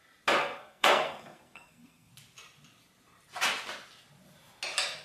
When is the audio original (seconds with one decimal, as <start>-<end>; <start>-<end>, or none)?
0.0-0.4; 2.1-5.0